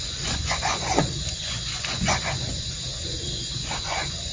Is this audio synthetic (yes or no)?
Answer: yes